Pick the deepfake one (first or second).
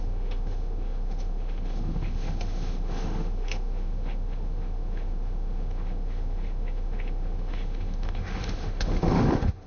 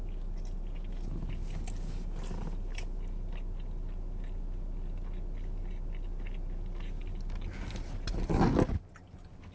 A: first